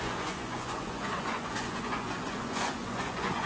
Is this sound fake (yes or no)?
yes